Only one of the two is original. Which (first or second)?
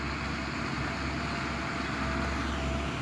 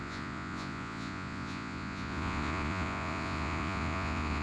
first